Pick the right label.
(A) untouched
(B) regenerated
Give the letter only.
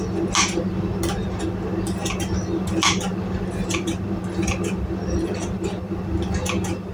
A